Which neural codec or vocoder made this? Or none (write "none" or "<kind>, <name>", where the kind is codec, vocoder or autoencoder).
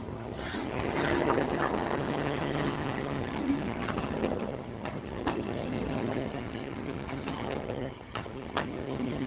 vocoder, HiFi-GAN